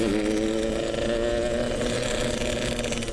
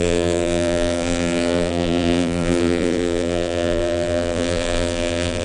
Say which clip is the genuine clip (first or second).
first